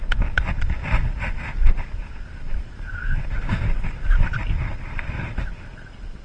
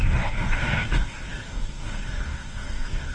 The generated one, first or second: second